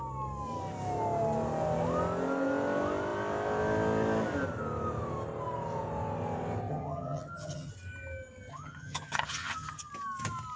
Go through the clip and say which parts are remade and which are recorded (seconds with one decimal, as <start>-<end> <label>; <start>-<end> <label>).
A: 0.0-6.7 recorded; 6.7-7.7 remade; 7.7-8.5 recorded; 8.5-9.9 remade; 9.9-10.6 recorded

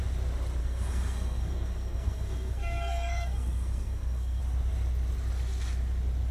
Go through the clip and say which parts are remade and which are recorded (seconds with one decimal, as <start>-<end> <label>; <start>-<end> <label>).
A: 0.0-0.6 recorded; 0.6-4.4 remade; 4.4-6.3 recorded